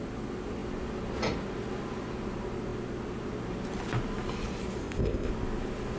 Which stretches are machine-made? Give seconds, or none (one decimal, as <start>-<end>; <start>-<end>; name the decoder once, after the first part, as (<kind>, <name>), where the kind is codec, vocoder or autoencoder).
4.8-5.3 (codec, ZipCodec)